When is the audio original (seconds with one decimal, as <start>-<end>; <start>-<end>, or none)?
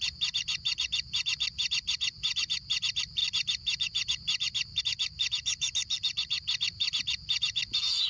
0.0-8.1